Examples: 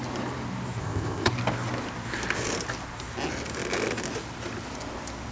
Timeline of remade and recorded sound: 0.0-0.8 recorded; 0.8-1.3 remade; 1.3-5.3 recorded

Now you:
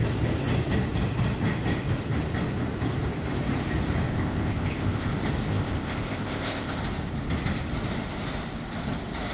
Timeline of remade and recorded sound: 0.0-4.1 recorded; 4.1-5.1 remade; 5.1-5.5 recorded; 5.5-6.8 remade; 6.8-9.3 recorded

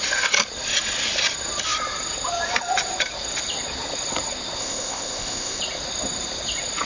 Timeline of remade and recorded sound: 0.0-4.6 recorded; 4.6-5.6 remade; 5.6-6.9 recorded

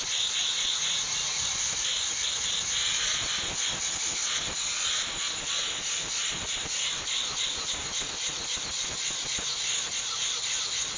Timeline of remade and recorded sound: 0.0-11.0 recorded

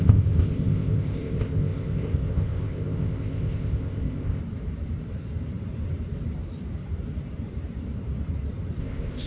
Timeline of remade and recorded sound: 0.0-4.4 remade; 4.4-8.8 recorded; 8.8-9.3 remade

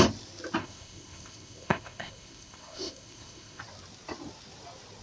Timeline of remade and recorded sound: 0.0-0.6 recorded; 0.6-3.6 remade; 3.6-5.0 recorded